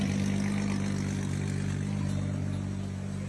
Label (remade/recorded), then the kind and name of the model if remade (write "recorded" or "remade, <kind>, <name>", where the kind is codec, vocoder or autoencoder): recorded